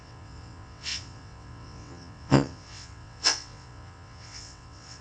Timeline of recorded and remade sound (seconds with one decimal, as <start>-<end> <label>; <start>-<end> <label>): 0.0-5.0 remade